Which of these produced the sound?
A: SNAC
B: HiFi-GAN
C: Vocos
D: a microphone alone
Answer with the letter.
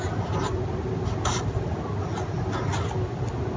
D